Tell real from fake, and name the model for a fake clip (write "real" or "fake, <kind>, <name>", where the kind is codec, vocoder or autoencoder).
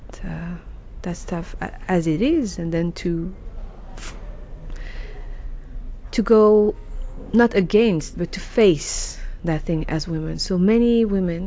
real